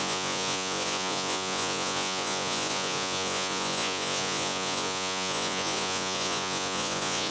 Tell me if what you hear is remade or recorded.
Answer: remade